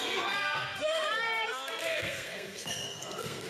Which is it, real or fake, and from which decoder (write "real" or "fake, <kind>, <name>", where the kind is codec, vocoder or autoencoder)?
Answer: fake, codec, SNAC